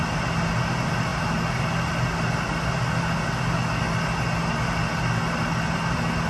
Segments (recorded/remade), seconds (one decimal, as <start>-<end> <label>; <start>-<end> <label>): 0.0-6.3 recorded